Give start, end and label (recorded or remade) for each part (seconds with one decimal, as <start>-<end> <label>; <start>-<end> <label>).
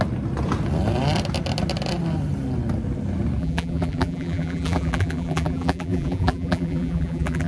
0.0-3.4 recorded; 3.4-7.5 remade